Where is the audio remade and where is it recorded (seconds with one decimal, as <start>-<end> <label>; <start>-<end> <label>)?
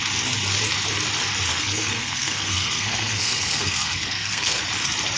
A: 0.0-1.5 recorded; 1.5-4.6 remade; 4.6-5.2 recorded